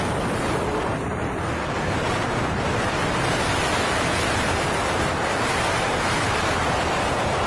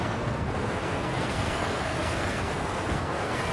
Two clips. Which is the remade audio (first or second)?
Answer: second